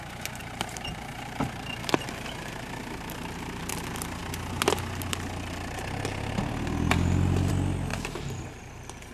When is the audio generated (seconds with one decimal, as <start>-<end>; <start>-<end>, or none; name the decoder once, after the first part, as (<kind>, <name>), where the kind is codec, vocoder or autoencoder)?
0.4-3.6 (vocoder, BigVGAN v2); 7.9-8.6